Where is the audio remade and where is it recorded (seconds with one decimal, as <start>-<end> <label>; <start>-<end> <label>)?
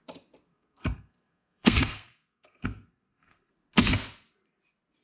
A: 0.0-0.5 recorded; 0.5-3.5 remade; 3.5-5.0 recorded